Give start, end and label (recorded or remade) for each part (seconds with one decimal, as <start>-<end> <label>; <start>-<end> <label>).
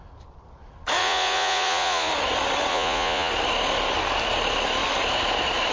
0.0-1.0 recorded; 1.0-2.1 remade; 2.1-2.7 recorded; 2.7-3.3 remade; 3.3-5.7 recorded